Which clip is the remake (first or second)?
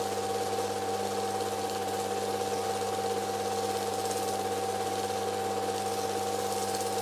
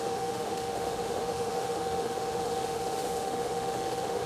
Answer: second